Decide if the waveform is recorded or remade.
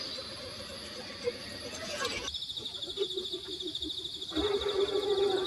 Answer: recorded